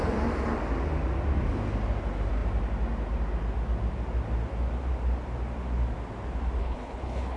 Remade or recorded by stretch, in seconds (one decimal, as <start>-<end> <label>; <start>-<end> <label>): 0.0-6.6 recorded; 6.6-7.4 remade